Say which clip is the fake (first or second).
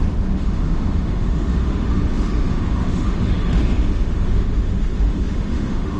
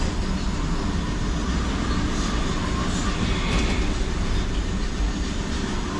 first